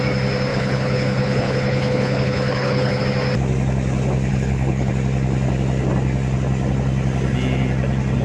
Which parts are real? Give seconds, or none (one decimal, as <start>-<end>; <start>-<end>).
0.0-0.5; 3.0-4.3; 4.9-8.2